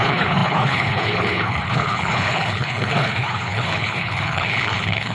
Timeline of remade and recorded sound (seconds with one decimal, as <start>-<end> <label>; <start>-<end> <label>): 0.0-5.1 remade